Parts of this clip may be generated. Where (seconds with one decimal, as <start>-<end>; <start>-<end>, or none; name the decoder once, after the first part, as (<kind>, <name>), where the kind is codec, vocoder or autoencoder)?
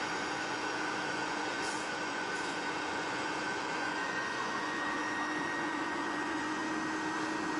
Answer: 0.0-6.6 (vocoder, Vocos)